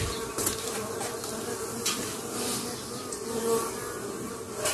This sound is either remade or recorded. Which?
recorded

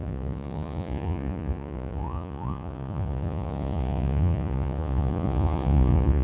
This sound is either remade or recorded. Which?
remade